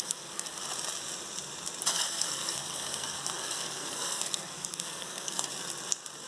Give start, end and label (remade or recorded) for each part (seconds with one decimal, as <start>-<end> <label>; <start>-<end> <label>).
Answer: 0.0-0.6 remade; 0.6-1.9 recorded; 1.9-5.5 remade; 5.5-6.3 recorded